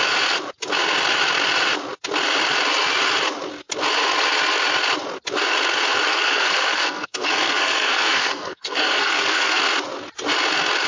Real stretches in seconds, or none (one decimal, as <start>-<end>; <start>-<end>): 0.0-6.1; 9.6-10.9